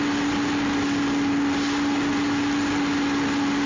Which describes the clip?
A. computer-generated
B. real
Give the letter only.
B